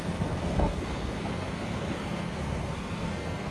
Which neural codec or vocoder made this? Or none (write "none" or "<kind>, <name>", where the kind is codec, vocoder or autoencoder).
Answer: codec, SNAC